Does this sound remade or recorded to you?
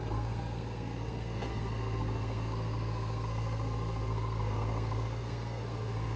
remade